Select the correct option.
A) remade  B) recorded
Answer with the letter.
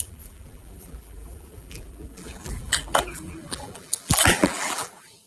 A